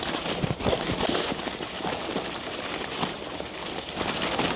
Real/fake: real